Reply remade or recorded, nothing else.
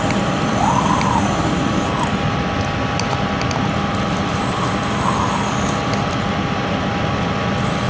recorded